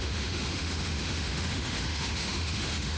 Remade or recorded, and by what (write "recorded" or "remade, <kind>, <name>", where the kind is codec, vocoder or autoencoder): remade, autoencoder, DAC-VAE